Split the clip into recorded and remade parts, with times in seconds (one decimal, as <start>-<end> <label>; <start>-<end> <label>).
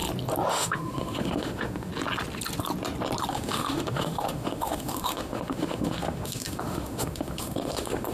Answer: 0.0-0.5 recorded; 0.5-1.9 remade; 1.9-3.3 recorded; 3.3-8.1 remade